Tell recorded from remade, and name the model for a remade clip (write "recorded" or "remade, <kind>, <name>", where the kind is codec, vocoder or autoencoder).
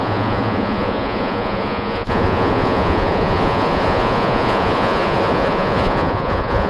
remade, vocoder, Vocos